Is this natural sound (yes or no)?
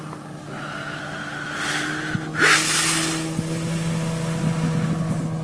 yes